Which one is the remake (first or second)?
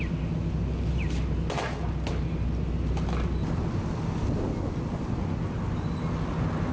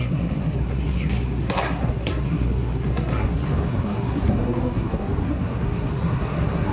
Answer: second